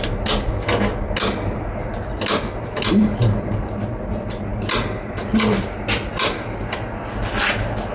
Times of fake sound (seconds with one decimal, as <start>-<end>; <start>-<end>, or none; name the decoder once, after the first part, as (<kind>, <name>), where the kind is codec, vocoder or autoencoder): none